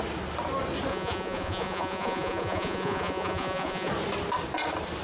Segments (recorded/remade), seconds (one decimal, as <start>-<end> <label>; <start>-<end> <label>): 0.0-0.9 recorded; 0.9-3.9 remade; 3.9-5.0 recorded